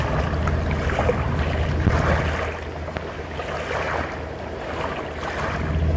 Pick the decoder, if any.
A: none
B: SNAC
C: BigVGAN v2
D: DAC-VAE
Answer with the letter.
A